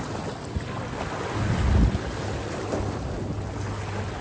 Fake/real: real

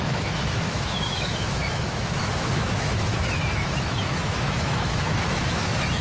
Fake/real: fake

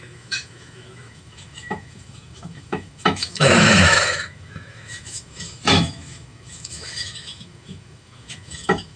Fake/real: fake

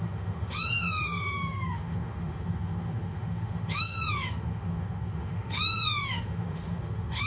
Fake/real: fake